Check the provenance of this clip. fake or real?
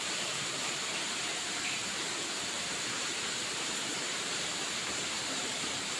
fake